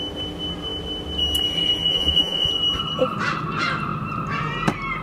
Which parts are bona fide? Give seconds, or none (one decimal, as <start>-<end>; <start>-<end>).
0.0-1.9; 2.5-5.0